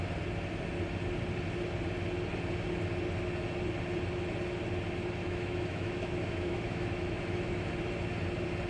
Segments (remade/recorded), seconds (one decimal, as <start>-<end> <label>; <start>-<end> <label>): 0.0-5.2 recorded; 5.2-7.7 remade; 7.7-8.7 recorded